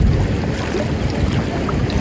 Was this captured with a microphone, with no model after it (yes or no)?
yes